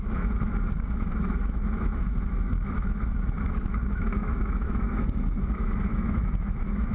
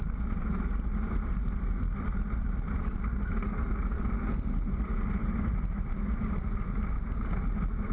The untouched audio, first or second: second